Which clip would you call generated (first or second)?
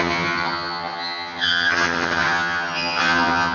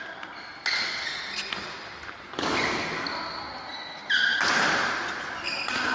first